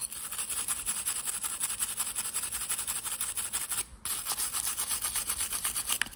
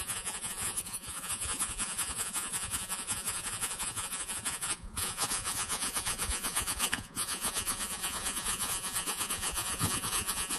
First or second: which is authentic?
first